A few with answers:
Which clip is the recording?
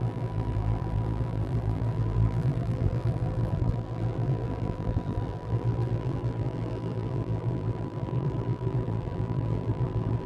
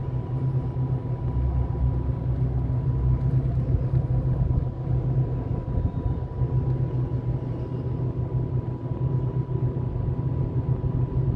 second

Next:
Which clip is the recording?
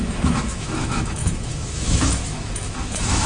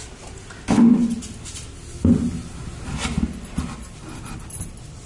second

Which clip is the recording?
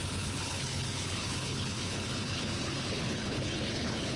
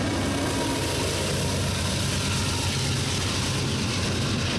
second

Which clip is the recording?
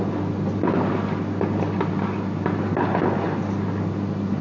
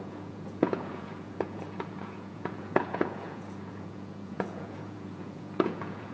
first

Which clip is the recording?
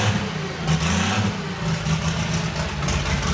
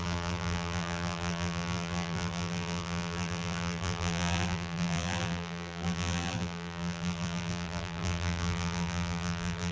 first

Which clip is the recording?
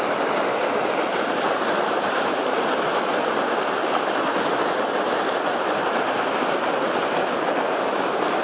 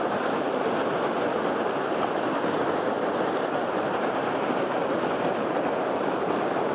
second